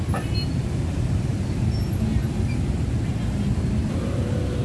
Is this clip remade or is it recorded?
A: recorded